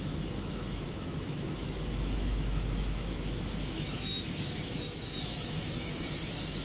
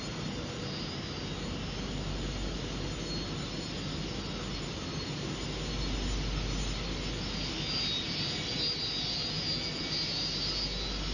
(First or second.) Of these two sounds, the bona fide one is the second